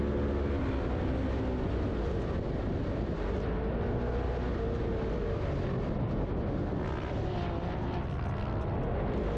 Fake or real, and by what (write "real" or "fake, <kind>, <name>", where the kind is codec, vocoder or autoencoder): real